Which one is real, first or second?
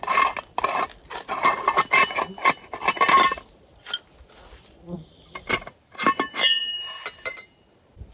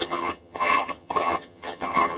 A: first